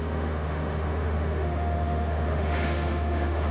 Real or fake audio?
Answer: fake